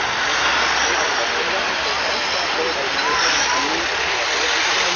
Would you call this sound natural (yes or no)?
yes